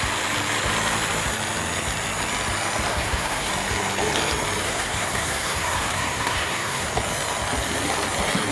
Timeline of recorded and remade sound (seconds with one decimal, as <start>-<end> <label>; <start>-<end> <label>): 0.0-2.9 recorded; 2.9-3.5 remade; 3.5-4.6 recorded; 4.6-6.9 remade; 6.9-8.5 recorded